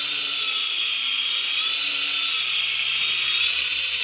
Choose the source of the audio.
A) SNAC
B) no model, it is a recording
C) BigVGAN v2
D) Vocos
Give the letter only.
C